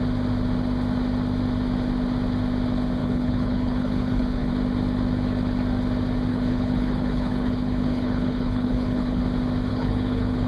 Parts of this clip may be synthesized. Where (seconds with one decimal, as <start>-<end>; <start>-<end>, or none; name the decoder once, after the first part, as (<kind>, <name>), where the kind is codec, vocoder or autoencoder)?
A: 3.0-4.5 (codec, HILCodec); 6.3-9.2; 9.7-10.5

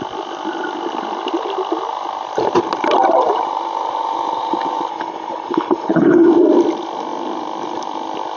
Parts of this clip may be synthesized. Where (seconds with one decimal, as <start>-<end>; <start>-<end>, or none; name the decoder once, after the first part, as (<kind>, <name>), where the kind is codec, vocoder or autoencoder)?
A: 4.9-6.3 (codec, HILCodec)

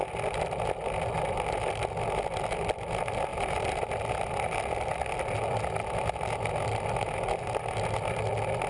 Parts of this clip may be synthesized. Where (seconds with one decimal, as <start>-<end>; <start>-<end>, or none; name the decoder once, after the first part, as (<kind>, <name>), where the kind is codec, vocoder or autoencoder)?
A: none

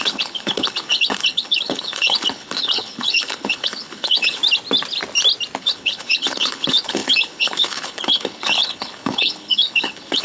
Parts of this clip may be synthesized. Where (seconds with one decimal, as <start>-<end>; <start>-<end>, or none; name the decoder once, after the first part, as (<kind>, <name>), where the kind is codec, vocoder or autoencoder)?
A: 0.0-4.4 (codec, HILCodec); 5.6-10.2

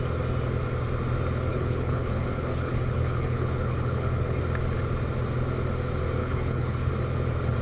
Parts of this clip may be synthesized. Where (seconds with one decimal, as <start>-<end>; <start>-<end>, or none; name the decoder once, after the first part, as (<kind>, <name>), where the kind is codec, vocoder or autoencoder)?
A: 1.5-4.4 (codec, HILCodec); 6.2-6.9

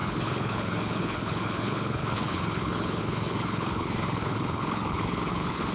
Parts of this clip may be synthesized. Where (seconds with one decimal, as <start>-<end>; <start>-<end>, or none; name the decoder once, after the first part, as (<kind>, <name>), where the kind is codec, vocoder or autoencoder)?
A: 0.0-5.7 (codec, HILCodec)